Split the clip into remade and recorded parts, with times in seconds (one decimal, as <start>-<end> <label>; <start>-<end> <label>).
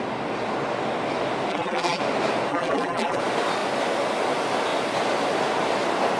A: 0.0-1.5 recorded; 1.5-2.0 remade; 2.0-2.5 recorded; 2.5-3.2 remade; 3.2-6.2 recorded